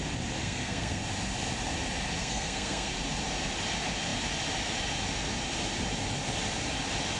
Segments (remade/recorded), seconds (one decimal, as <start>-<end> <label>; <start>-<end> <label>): 0.0-0.4 recorded; 0.4-1.0 remade; 1.0-2.2 recorded; 2.2-2.9 remade; 2.9-7.2 recorded